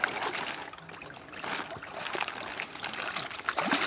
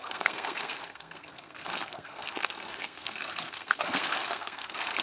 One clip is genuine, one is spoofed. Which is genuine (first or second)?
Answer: first